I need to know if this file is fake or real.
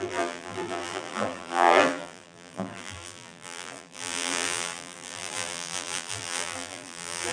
fake